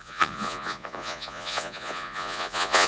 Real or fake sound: fake